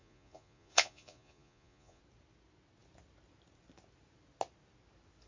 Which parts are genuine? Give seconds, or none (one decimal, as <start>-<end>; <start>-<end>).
2.0-5.3